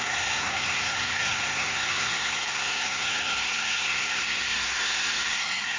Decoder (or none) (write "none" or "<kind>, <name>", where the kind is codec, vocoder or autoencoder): codec, SNAC